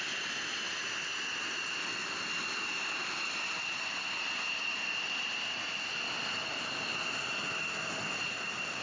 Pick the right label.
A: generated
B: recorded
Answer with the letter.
B